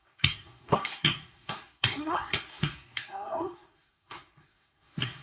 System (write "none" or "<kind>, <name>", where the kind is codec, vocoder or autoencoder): codec, SNAC